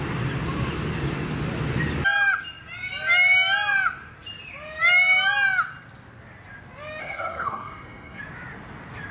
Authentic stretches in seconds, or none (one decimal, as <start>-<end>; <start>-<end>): 0.0-7.0; 8.2-9.1